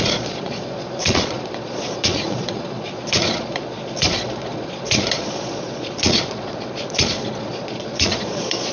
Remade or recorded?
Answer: remade